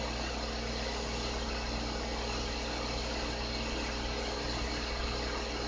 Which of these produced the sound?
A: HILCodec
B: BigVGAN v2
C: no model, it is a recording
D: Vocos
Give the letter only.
C